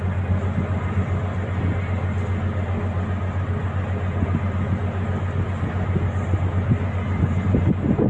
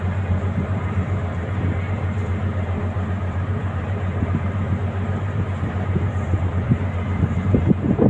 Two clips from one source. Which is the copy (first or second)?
second